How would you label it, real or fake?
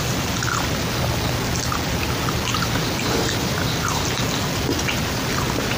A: real